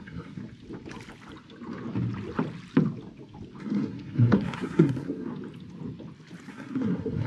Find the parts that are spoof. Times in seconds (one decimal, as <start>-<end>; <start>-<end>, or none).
0.0-0.4; 3.6-5.3; 6.5-7.3